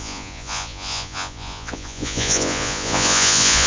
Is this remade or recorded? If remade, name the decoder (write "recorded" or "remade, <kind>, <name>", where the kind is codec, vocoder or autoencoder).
remade, vocoder, Vocos